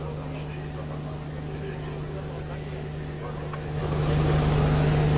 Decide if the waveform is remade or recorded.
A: recorded